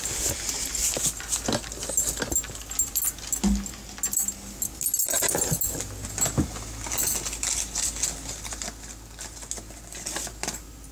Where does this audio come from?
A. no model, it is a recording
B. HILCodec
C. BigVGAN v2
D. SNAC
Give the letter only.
A